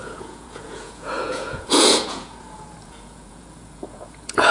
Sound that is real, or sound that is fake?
fake